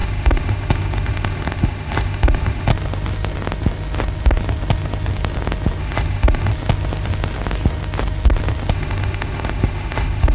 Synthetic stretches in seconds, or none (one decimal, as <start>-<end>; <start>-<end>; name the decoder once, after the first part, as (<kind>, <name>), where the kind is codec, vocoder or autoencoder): 0.0-2.7 (autoencoder, DAC-VAE); 5.8-6.5; 8.7-10.3